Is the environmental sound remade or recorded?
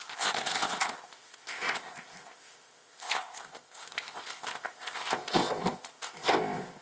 remade